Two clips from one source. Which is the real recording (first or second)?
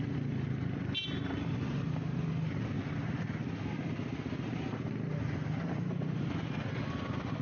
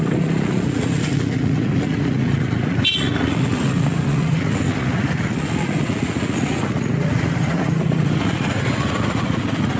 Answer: first